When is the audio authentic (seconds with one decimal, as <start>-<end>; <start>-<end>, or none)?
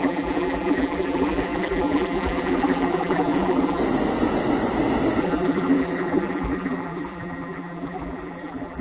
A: 3.8-5.2